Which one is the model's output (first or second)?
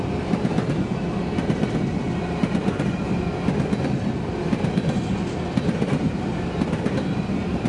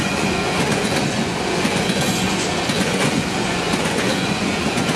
second